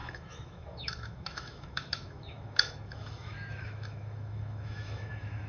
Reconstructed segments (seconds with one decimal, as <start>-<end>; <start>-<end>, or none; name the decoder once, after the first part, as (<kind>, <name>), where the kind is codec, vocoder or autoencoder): 0.0-5.5 (autoencoder, DAC-VAE)